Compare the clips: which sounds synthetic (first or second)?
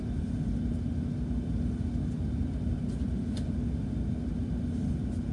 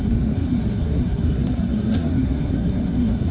second